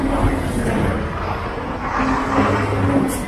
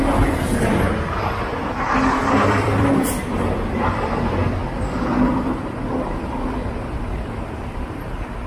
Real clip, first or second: first